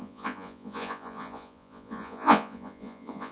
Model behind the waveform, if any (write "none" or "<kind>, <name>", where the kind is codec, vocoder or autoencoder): vocoder, Vocos